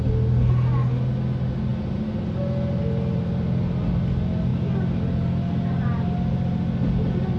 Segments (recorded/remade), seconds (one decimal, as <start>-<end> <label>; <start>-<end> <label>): 0.0-7.4 recorded